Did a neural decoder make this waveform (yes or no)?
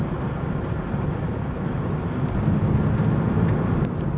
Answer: no